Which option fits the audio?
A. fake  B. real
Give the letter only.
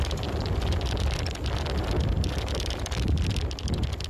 B